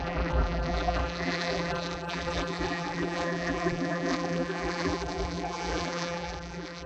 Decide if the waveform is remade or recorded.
remade